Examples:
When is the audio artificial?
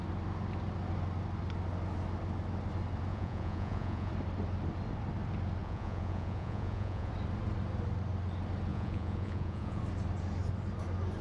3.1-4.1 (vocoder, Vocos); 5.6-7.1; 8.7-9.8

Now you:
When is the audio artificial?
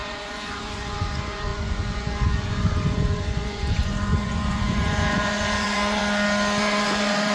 0.0-6.0 (vocoder, Vocos); 6.6-7.3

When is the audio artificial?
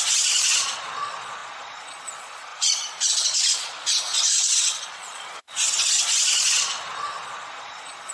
0.0-6.6 (vocoder, Vocos); 7.2-8.1